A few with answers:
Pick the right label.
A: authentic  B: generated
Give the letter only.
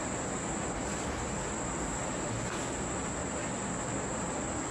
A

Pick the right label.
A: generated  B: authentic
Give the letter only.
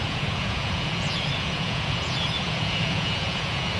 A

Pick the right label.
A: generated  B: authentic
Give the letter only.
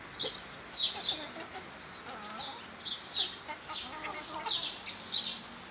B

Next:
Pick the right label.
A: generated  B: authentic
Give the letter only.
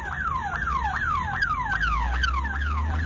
B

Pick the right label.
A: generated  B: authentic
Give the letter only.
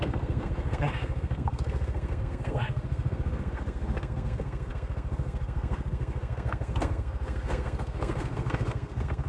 A